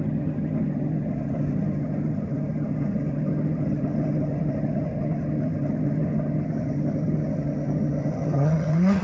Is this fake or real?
fake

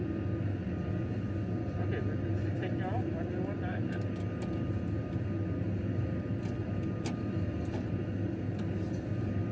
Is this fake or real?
real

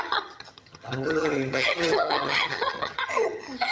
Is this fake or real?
fake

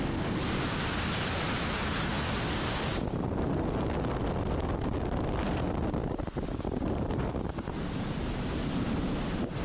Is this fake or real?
real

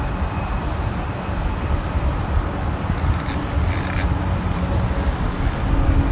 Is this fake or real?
real